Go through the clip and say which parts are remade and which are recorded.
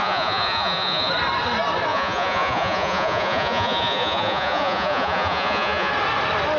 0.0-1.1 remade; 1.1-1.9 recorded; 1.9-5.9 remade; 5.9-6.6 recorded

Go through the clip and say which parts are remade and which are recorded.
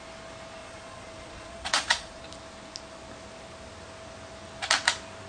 0.0-0.6 recorded; 0.6-2.2 remade; 2.2-5.3 recorded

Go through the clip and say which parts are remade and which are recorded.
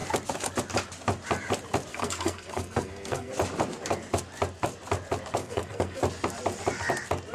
0.0-1.9 recorded; 1.9-3.3 remade; 3.3-5.4 recorded; 5.4-6.0 remade; 6.0-7.3 recorded